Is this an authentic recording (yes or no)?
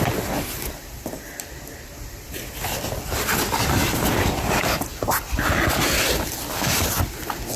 no